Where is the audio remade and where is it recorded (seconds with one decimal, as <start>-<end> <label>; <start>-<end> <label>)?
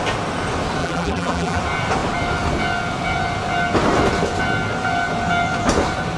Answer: 0.0-0.8 recorded; 0.8-1.6 remade; 1.6-6.2 recorded